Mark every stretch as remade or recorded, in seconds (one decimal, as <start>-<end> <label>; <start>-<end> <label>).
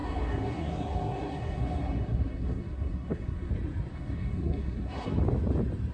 0.0-3.5 remade; 3.5-3.9 recorded; 3.9-5.1 remade; 5.1-5.9 recorded